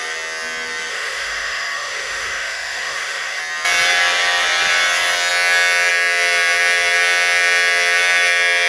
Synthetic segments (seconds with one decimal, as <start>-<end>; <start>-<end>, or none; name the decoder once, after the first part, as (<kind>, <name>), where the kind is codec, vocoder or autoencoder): 0.9-3.4 (autoencoder, DAC-VAE)